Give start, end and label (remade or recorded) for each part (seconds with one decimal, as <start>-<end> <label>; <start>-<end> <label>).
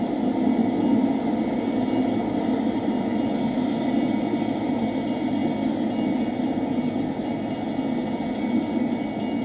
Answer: 0.0-9.4 recorded